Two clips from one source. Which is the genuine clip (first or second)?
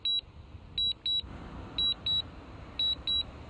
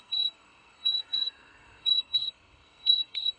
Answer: first